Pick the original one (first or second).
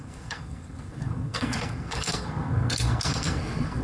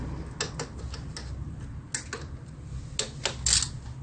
second